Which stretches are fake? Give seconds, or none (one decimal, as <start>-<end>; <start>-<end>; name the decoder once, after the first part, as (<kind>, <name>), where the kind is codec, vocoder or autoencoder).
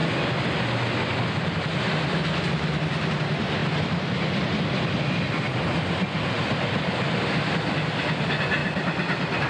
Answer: 3.6-7.5 (vocoder, BigVGAN v2); 8.6-9.5